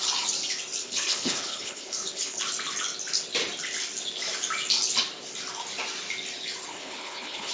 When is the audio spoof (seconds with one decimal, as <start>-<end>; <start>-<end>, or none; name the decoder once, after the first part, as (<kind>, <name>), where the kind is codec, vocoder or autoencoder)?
0.8-2.4 (codec, HILCodec); 6.7-7.5